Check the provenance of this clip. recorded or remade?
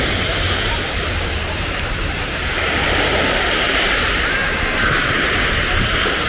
remade